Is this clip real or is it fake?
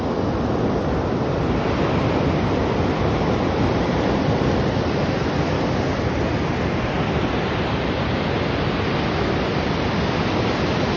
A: real